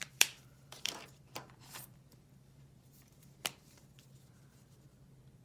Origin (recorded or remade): remade